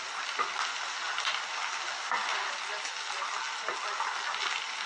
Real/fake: real